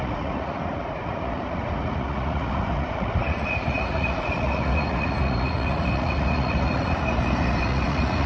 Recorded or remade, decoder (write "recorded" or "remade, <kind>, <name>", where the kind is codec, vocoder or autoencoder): remade, vocoder, Vocos